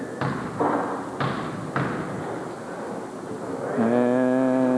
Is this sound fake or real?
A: real